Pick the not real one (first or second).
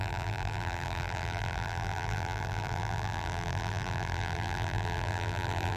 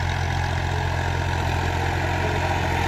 first